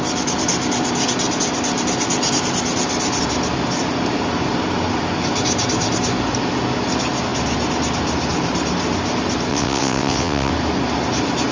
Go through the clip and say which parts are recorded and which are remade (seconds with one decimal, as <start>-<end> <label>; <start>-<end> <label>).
0.0-9.5 recorded; 9.5-10.5 remade; 10.5-11.5 recorded